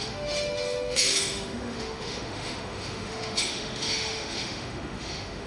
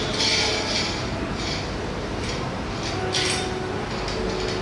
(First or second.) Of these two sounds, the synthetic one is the first